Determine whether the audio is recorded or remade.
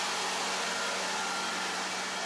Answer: recorded